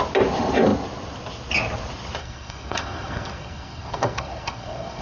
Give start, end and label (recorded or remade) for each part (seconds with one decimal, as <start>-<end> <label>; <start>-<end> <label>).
0.0-2.2 recorded; 2.2-5.0 remade

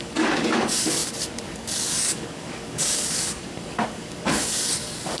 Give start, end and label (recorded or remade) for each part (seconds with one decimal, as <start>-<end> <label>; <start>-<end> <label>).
0.0-5.2 remade

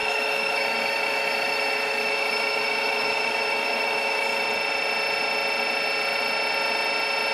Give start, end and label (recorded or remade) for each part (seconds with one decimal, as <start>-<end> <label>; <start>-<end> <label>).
0.0-4.4 remade; 4.4-7.3 recorded

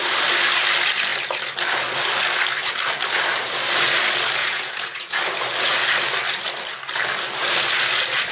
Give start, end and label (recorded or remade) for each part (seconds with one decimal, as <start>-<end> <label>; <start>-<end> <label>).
0.0-4.4 recorded; 4.4-5.2 remade; 5.2-8.3 recorded

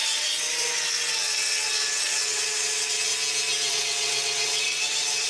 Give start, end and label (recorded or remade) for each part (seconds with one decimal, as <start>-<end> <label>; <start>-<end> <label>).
0.0-3.1 remade; 3.1-3.7 recorded; 3.7-5.3 remade

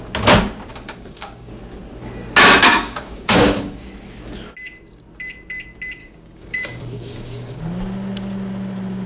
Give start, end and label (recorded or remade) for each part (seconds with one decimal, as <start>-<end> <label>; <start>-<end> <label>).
0.0-0.7 recorded; 0.7-1.5 remade; 1.5-2.7 recorded; 2.7-3.9 remade; 3.9-6.0 recorded; 6.0-7.6 remade; 7.6-9.1 recorded

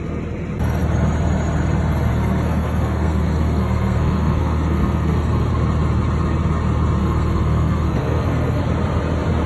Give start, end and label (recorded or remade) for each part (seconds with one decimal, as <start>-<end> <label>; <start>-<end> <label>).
0.0-2.1 recorded; 2.1-5.5 remade; 5.5-7.0 recorded; 7.0-8.6 remade; 8.6-9.5 recorded

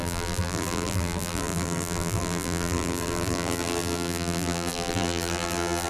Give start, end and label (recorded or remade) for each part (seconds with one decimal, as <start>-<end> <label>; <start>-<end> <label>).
0.0-5.9 remade